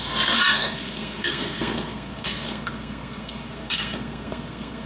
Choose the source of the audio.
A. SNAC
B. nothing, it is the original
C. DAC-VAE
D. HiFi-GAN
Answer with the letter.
A